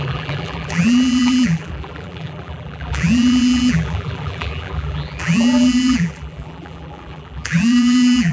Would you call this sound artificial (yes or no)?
yes